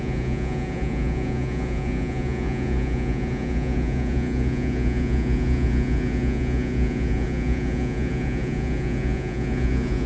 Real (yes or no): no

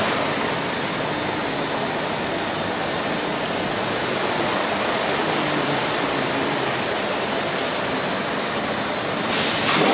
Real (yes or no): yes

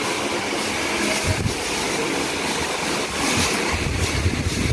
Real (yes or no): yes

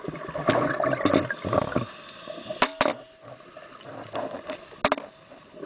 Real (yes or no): yes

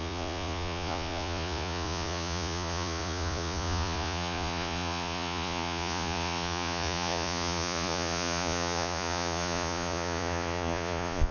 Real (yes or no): no